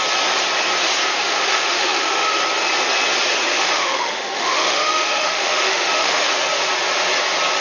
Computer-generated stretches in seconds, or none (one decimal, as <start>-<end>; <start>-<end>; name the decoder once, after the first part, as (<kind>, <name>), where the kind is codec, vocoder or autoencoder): 1.1-2.4 (autoencoder, DAC-VAE); 3.5-6.3